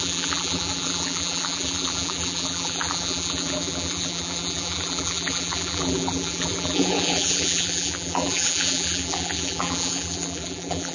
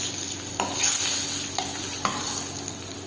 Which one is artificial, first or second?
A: first